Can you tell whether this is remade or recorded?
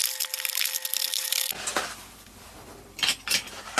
recorded